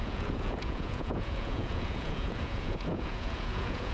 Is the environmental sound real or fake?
fake